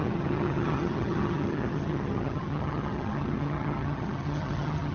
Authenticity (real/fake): fake